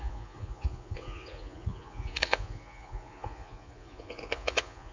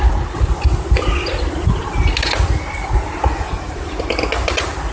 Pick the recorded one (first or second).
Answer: second